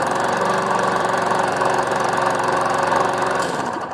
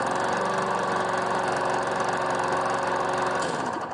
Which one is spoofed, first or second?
first